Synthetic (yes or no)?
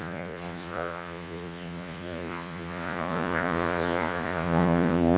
yes